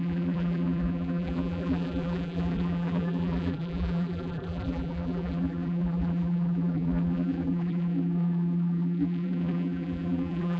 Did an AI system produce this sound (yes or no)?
yes